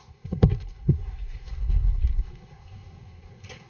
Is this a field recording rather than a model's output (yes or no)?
no